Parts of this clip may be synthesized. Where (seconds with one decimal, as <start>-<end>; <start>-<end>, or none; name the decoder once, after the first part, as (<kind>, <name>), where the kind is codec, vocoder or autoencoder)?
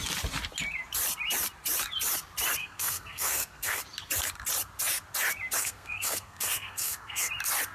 2.6-3.8 (codec, SNAC); 5.6-7.3